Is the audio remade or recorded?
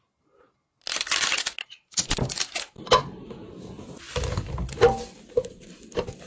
recorded